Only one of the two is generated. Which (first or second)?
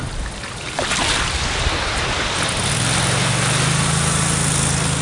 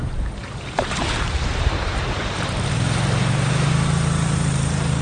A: second